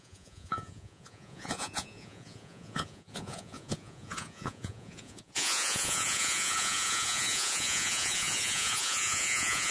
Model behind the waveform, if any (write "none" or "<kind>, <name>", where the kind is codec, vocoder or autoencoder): vocoder, Vocos